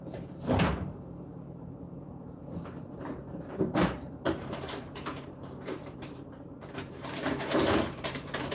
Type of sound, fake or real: fake